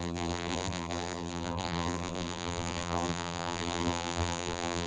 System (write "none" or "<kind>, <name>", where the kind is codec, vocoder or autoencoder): vocoder, BigVGAN v2